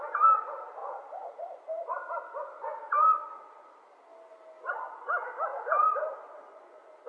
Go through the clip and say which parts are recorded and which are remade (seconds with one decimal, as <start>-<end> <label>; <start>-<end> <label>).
0.0-0.8 recorded; 0.8-2.1 remade; 2.1-5.5 recorded; 5.5-6.6 remade; 6.6-7.1 recorded